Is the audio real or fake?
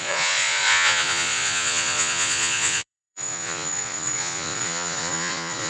fake